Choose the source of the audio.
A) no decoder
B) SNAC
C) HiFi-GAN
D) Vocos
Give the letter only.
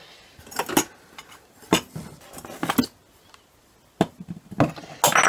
A